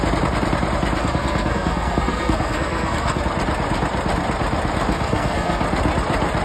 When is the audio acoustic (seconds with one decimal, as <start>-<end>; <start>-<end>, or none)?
0.0-1.0; 3.2-4.9; 5.6-6.4